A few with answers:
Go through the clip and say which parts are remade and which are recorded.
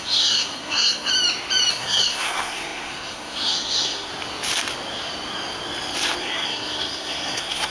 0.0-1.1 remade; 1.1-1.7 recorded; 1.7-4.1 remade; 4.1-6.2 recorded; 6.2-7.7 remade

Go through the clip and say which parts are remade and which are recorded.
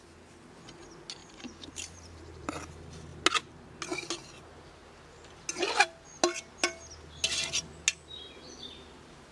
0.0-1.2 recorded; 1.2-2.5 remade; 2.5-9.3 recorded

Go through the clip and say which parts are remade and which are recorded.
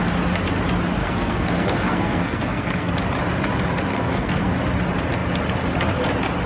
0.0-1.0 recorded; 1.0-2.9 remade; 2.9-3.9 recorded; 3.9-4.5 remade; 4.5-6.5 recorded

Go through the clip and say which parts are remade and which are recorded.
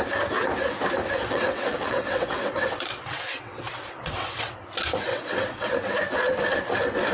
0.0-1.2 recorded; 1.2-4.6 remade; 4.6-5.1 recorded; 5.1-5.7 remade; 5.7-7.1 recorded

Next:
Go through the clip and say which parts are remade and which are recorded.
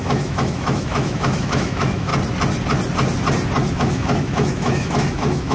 0.0-2.1 remade; 2.1-3.7 recorded; 3.7-5.5 remade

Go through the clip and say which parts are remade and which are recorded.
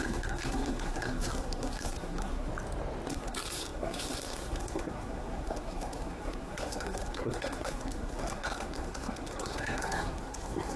0.0-2.5 remade; 2.5-3.1 recorded; 3.1-10.8 remade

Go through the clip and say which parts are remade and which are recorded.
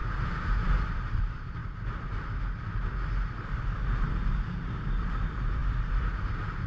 0.0-0.6 recorded; 0.6-1.6 remade; 1.6-4.1 recorded; 4.1-6.7 remade